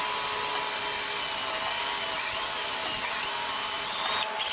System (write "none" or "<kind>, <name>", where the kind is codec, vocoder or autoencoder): none